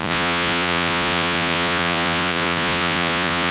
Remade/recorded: remade